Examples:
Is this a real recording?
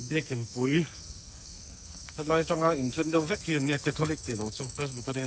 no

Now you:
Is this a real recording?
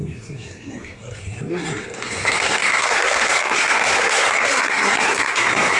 no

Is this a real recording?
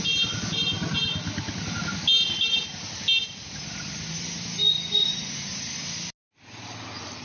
yes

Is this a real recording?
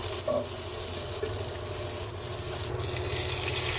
yes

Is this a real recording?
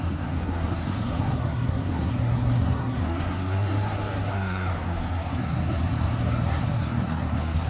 no